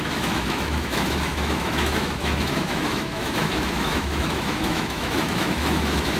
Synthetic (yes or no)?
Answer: yes